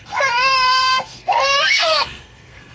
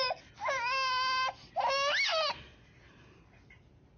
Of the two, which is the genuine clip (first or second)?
second